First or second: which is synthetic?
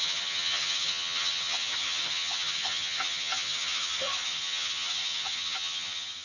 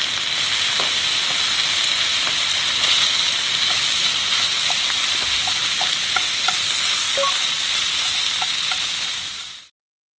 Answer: first